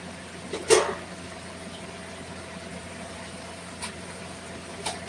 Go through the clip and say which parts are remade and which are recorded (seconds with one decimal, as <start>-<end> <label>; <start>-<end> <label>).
0.0-2.7 recorded; 2.7-4.2 remade; 4.2-5.1 recorded